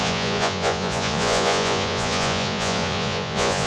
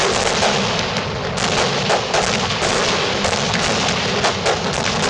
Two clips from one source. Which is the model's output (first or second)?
first